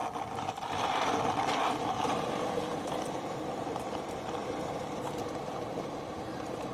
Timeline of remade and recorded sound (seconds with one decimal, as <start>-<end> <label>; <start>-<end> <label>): 0.0-2.3 recorded; 2.3-6.7 remade